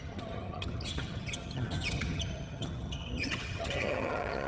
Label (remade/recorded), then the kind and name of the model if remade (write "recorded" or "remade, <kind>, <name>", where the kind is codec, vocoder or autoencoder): remade, vocoder, HiFi-GAN